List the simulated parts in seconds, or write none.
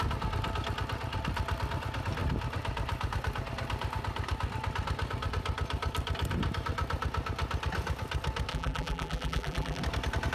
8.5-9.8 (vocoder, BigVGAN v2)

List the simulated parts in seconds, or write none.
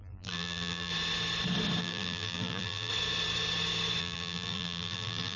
0.0-0.9 (vocoder, BigVGAN v2); 1.8-2.9; 4.0-5.4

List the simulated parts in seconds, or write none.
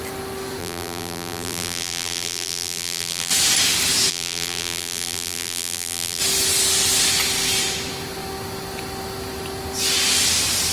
0.6-3.3 (vocoder, BigVGAN v2); 4.1-6.2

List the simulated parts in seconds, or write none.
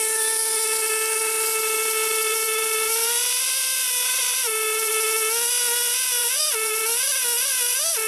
1.6-4.9 (vocoder, BigVGAN v2); 6.2-6.8